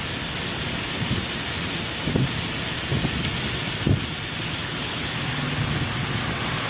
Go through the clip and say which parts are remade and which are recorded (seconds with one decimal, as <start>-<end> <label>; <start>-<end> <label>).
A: 0.0-4.6 recorded; 4.6-5.1 remade; 5.1-6.7 recorded